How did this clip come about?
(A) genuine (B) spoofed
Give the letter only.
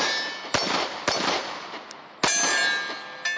A